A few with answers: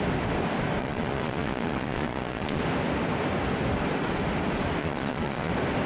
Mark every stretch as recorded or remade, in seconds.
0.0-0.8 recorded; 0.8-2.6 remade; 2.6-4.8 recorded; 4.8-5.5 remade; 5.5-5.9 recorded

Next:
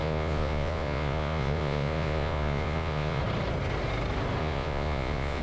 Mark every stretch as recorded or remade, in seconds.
0.0-3.2 remade; 3.2-4.4 recorded; 4.4-5.4 remade

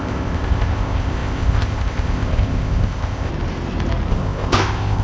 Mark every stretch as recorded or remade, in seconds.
0.0-3.3 remade; 3.3-4.1 recorded; 4.1-5.0 remade

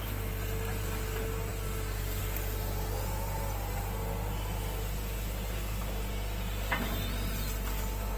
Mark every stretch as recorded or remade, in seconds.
0.0-8.2 recorded

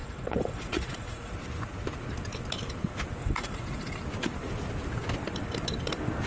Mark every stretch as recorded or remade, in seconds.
0.0-1.3 remade; 1.3-3.2 recorded; 3.2-4.0 remade; 4.0-6.3 recorded

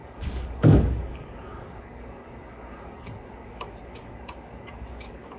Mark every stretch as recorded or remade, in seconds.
0.0-5.4 remade